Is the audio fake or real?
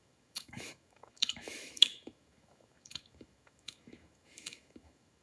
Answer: fake